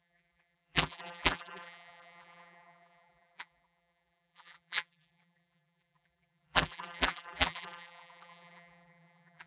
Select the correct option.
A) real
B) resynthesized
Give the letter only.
B